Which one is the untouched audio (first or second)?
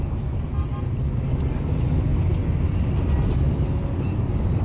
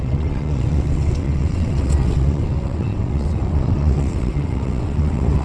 first